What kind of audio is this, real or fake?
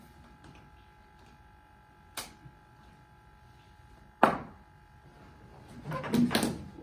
real